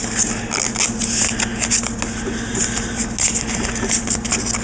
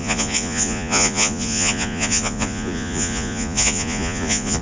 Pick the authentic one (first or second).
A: first